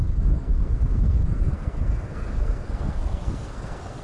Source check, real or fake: fake